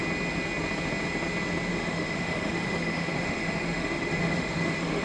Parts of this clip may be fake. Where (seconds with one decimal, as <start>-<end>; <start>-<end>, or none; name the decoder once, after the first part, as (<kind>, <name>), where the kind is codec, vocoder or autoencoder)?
1.7-5.0 (autoencoder, DAC-VAE)